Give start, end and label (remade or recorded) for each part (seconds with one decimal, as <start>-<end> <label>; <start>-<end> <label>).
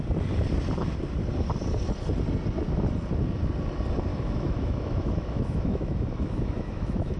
0.0-4.1 recorded; 4.1-7.2 remade